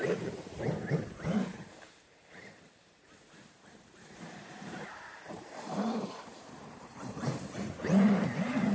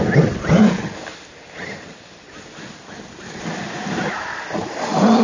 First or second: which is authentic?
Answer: second